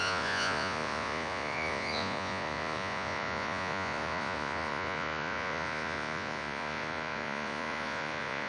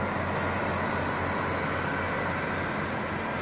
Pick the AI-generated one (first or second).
first